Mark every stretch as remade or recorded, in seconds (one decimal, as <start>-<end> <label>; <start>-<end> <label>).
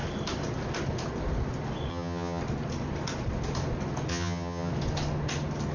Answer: 0.0-1.9 recorded; 1.9-2.4 remade; 2.4-4.1 recorded; 4.1-4.7 remade; 4.7-5.7 recorded